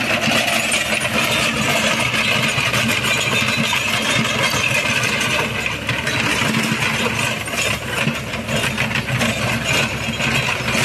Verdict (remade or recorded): recorded